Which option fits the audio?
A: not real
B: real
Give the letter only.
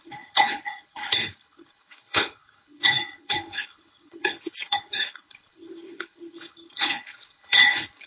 A